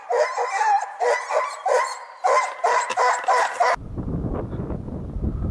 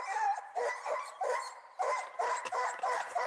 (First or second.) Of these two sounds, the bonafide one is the first